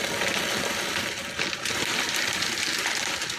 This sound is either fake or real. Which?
real